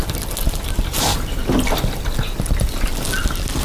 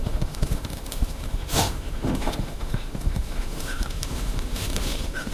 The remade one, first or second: second